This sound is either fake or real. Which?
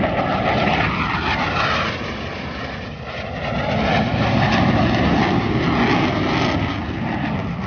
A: real